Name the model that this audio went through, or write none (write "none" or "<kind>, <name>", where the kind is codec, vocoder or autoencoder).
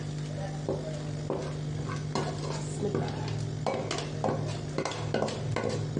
none